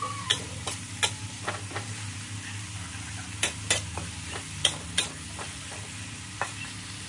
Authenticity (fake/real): real